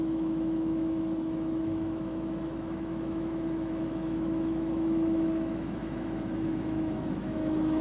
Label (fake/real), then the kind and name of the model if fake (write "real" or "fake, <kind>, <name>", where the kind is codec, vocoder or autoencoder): fake, autoencoder, DAC-VAE